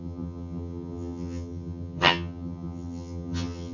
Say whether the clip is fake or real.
fake